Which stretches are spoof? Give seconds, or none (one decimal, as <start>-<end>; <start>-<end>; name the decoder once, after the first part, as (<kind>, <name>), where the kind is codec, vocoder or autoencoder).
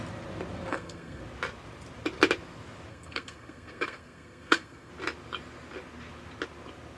0.7-1.2 (codec, SNAC); 2.9-4.9